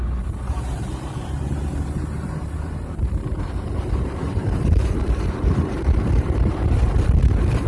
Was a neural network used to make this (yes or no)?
yes